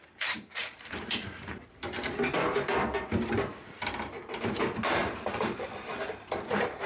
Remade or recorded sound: remade